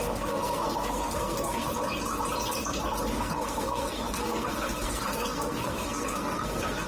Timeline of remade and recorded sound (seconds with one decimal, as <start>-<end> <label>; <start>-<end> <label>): 0.0-1.7 remade; 1.7-3.2 recorded; 3.2-6.9 remade